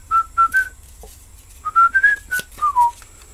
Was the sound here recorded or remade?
recorded